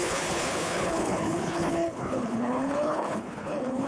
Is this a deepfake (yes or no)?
yes